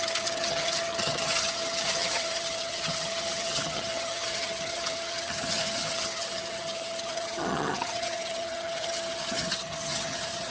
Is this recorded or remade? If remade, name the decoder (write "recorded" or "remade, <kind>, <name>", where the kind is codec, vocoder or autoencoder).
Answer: remade, vocoder, HiFi-GAN